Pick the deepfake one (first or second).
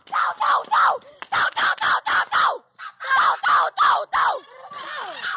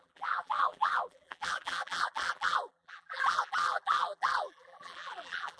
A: second